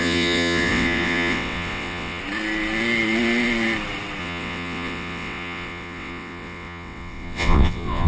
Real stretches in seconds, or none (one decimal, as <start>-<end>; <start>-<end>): 2.2-4.2